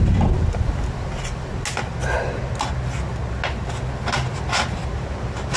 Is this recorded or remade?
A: recorded